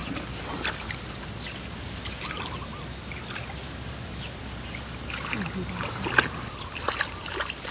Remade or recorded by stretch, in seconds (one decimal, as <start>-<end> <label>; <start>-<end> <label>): 0.0-7.7 recorded